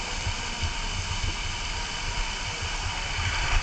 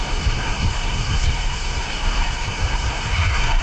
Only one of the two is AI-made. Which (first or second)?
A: second